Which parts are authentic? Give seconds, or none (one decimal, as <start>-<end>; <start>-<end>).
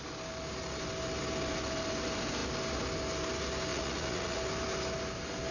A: 0.0-3.7; 4.4-5.5